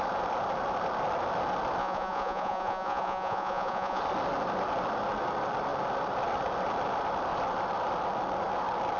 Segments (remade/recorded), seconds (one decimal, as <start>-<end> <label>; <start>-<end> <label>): 0.0-1.8 recorded; 1.8-4.0 remade; 4.0-9.0 recorded